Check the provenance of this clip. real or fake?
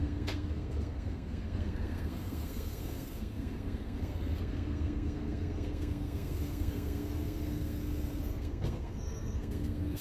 fake